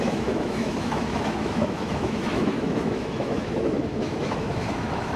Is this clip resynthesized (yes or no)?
yes